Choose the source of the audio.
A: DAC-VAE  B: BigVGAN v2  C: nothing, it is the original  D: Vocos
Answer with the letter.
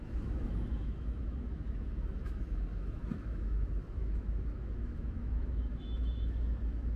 A